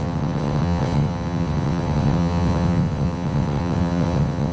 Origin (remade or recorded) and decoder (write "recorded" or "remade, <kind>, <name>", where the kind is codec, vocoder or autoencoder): remade, vocoder, WaveNeXt